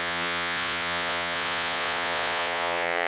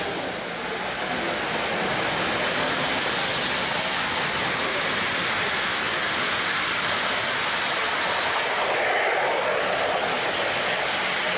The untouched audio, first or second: second